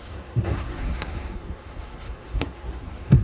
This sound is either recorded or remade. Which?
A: remade